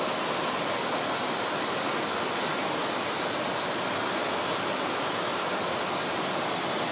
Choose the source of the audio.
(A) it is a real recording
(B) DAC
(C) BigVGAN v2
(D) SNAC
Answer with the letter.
A